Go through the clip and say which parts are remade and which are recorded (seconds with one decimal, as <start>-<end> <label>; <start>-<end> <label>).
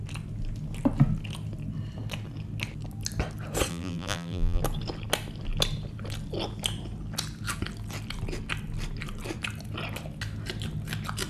0.0-3.7 recorded; 3.7-4.6 remade; 4.6-11.3 recorded